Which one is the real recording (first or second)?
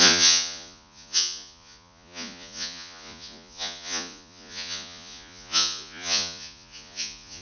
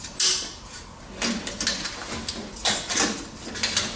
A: second